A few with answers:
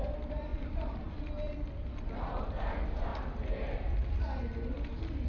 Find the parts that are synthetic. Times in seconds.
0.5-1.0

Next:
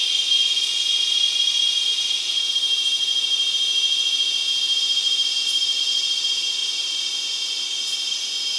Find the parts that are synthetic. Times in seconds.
6.6-7.1

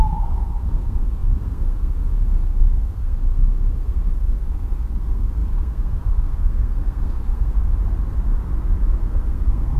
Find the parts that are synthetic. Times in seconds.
0.0-7.7; 9.0-9.8

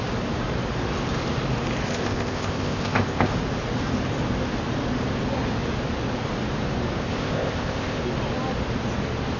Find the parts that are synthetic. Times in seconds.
1.9-3.3; 7.1-8.0

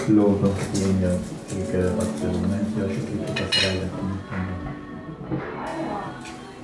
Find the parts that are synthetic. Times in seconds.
none

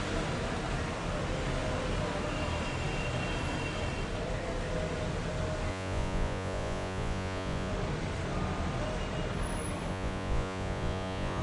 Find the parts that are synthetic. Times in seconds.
5.7-7.7; 9.9-11.4